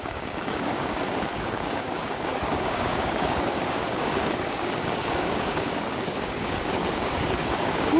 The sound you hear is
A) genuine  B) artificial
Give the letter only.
B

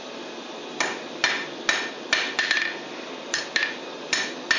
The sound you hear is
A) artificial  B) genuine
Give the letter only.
B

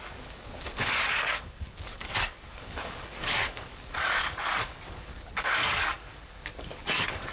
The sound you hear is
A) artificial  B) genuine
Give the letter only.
A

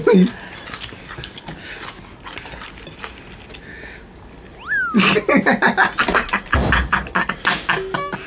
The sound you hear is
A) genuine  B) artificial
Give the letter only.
A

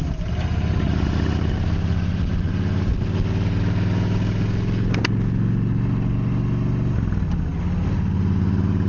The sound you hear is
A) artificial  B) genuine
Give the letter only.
B